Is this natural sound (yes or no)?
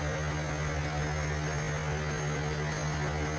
yes